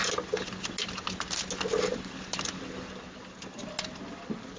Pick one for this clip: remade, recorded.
recorded